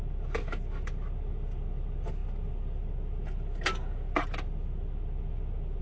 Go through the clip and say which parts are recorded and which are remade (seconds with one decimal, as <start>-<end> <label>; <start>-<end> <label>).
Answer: 0.0-5.8 recorded